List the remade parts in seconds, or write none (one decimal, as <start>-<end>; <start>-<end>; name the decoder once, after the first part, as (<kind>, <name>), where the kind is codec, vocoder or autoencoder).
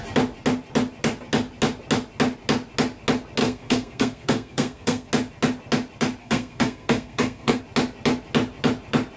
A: 3.4-5.1 (codec, SNAC); 6.2-7.6